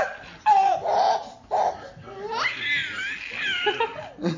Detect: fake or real real